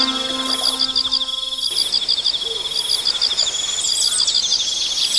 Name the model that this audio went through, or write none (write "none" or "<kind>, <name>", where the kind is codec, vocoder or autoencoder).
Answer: none